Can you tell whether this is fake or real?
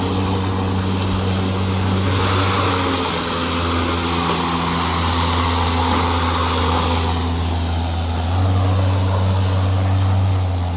real